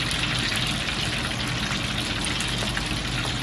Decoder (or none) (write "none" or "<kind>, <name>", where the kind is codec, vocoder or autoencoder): none